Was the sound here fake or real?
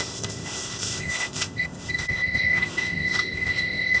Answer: fake